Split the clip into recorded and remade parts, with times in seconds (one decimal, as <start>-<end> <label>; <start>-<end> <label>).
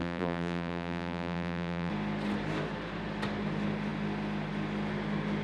0.0-1.9 remade; 1.9-5.4 recorded